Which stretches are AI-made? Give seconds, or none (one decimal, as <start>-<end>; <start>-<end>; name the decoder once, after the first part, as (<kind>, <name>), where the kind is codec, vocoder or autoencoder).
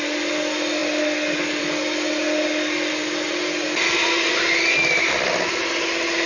none